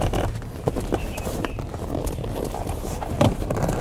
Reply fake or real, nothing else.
fake